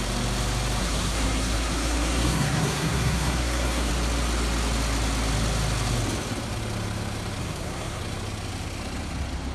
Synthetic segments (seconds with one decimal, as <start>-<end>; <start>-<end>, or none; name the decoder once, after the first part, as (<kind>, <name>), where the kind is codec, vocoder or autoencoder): 0.8-3.9 (codec, SNAC); 7.4-8.0